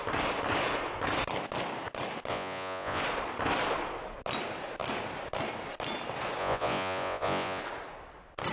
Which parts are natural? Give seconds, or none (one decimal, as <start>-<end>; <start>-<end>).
0.0-2.3; 3.0-6.4; 7.6-8.5